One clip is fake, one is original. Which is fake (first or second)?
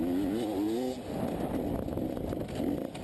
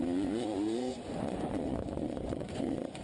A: second